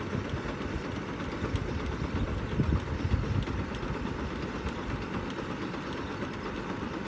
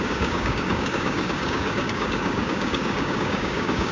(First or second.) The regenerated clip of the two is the second